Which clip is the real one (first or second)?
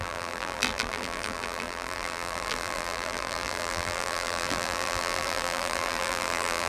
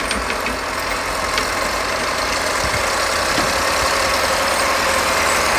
second